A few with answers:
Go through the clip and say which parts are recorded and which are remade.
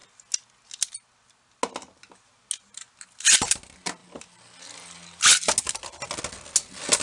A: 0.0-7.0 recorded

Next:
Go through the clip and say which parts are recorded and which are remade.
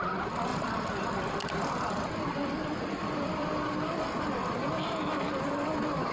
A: 0.0-0.5 recorded; 0.5-4.2 remade; 4.2-6.1 recorded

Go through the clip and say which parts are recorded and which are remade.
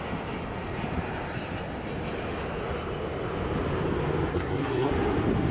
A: 0.0-4.3 recorded; 4.3-4.9 remade; 4.9-5.5 recorded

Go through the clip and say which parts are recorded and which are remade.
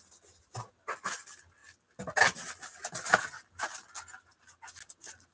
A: 0.0-5.3 recorded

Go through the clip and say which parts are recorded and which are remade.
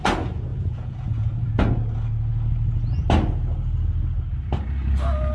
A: 0.0-0.5 recorded; 0.5-1.5 remade; 1.5-5.3 recorded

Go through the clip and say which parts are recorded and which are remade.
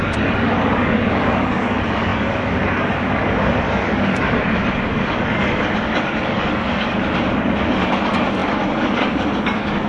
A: 0.0-9.9 remade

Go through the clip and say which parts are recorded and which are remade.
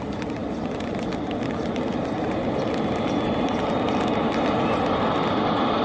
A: 0.0-5.8 recorded